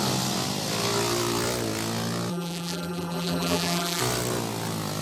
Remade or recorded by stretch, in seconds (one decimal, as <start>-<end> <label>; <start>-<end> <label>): 0.0-2.3 recorded; 2.3-4.0 remade; 4.0-5.0 recorded